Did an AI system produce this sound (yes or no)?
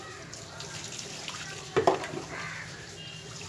no